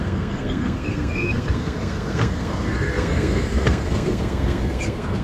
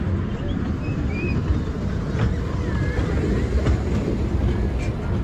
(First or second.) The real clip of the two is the second